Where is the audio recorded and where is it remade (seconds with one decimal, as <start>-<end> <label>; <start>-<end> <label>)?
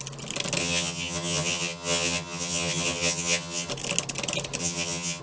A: 0.0-0.6 recorded; 0.6-3.7 remade; 3.7-4.6 recorded; 4.6-5.2 remade